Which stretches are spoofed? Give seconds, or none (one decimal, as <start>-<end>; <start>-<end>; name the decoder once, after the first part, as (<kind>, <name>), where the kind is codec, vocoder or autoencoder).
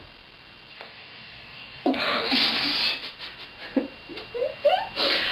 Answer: 0.7-2.3 (codec, DAC)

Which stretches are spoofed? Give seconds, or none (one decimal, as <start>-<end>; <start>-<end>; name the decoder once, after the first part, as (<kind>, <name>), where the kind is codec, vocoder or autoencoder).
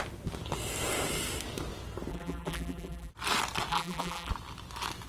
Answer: 2.1-3.1 (vocoder, BigVGAN v2); 3.7-4.3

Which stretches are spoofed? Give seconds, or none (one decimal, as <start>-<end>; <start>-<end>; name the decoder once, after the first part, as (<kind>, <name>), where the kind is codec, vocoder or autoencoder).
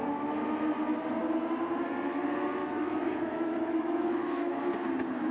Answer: 2.6-4.6 (autoencoder, DAC-VAE)